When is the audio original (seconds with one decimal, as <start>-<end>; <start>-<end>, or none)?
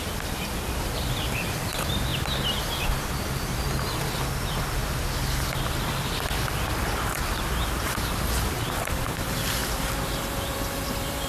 2.1-2.6; 4.8-5.6